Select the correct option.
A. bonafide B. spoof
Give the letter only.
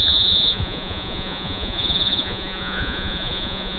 B